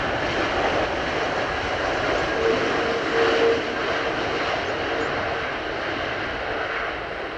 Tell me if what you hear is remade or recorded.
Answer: recorded